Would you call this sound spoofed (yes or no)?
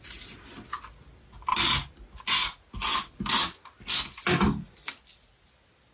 no